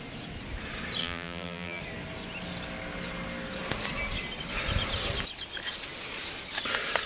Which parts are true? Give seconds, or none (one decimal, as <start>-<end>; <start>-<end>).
0.0-1.0; 1.8-7.1